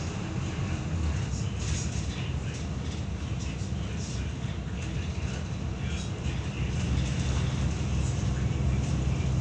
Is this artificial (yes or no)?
no